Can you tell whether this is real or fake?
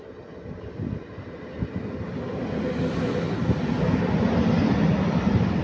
real